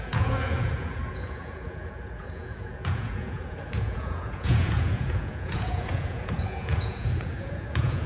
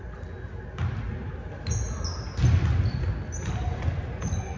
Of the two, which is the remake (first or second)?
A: first